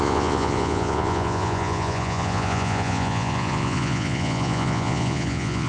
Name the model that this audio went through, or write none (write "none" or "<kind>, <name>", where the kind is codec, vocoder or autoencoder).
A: vocoder, Vocos